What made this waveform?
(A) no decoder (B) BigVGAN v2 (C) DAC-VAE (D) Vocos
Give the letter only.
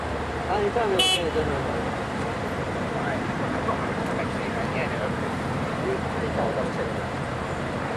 B